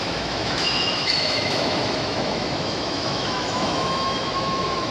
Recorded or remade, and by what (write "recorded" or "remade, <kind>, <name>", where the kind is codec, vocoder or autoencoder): remade, autoencoder, DAC-VAE